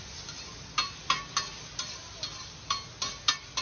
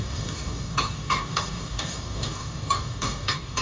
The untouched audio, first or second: first